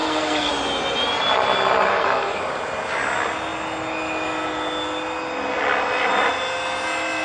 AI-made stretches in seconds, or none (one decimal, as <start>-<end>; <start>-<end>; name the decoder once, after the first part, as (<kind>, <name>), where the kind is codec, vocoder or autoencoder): 0.0-0.5 (codec, SNAC); 1.9-2.4